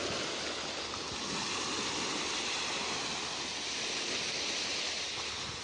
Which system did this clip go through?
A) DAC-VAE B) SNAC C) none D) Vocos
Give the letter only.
C